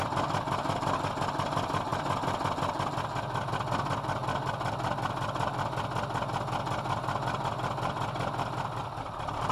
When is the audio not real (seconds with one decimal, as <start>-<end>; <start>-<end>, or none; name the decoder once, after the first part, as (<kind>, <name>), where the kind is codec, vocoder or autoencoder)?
none